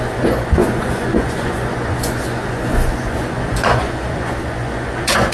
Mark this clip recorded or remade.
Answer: remade